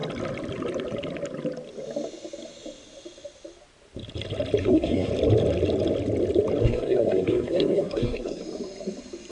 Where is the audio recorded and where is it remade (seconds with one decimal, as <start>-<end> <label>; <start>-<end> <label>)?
0.0-4.6 recorded; 4.6-5.1 remade; 5.1-6.6 recorded; 6.6-8.4 remade; 8.4-9.3 recorded